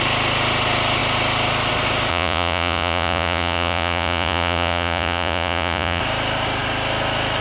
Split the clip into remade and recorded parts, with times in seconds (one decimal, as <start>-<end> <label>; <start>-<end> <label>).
0.0-2.1 recorded; 2.1-6.0 remade; 6.0-7.4 recorded